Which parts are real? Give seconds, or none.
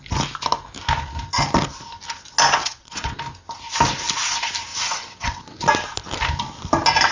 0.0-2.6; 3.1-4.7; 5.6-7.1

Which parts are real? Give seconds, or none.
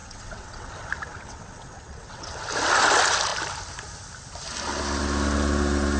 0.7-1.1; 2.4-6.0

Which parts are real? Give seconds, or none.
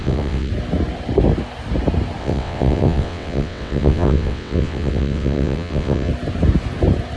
0.5-2.2; 6.1-7.2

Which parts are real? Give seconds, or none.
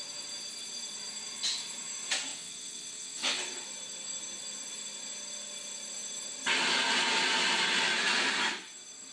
0.0-2.3; 3.4-9.1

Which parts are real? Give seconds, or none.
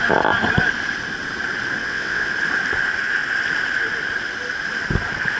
0.0-1.8; 2.3-5.4